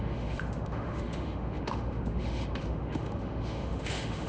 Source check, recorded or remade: remade